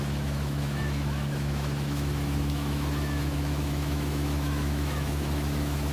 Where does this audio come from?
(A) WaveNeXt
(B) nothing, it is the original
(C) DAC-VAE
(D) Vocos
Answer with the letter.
C